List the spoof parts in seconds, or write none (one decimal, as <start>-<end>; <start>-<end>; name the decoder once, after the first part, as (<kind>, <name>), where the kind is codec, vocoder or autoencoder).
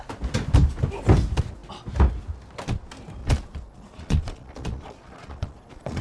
3.2-6.0 (vocoder, Vocos)